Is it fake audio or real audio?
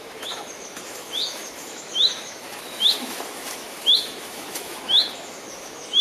fake